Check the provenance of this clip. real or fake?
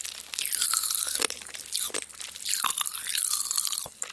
real